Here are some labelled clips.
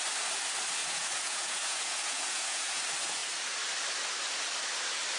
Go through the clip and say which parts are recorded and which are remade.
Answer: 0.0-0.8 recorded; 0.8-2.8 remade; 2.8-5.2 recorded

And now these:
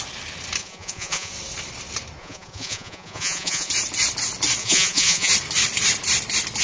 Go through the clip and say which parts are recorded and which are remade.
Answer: 0.0-0.6 recorded; 0.6-1.3 remade; 1.3-2.2 recorded; 2.2-3.7 remade; 3.7-4.6 recorded; 4.6-5.3 remade; 5.3-6.6 recorded

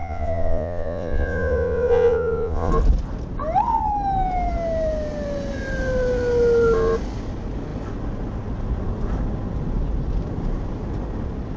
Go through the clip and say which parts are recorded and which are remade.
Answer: 0.0-2.7 remade; 2.7-11.6 recorded

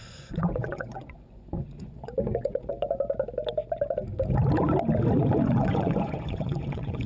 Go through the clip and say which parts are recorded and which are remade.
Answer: 0.0-2.7 remade; 2.7-5.2 recorded; 5.2-7.1 remade

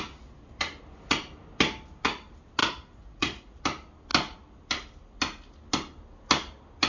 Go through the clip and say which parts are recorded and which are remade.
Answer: 0.0-2.6 recorded; 2.6-3.6 remade; 3.6-6.9 recorded

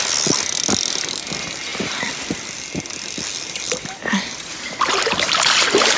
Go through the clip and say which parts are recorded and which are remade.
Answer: 0.0-6.0 recorded

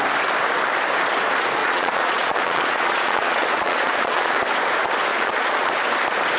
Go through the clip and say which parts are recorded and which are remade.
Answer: 0.0-1.6 recorded; 1.6-4.4 remade; 4.4-5.1 recorded; 5.1-5.7 remade; 5.7-6.4 recorded

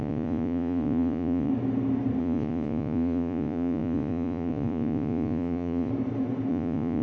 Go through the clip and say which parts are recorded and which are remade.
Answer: 0.0-1.5 remade; 1.5-2.2 recorded; 2.2-5.9 remade; 5.9-6.5 recorded; 6.5-7.0 remade